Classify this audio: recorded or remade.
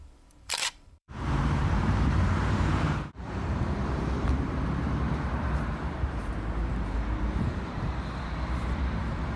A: remade